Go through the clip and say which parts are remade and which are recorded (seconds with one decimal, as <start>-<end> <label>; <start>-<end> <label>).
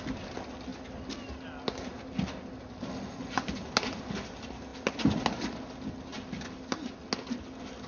0.0-7.9 recorded